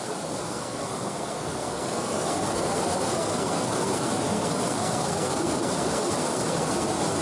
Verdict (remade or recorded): remade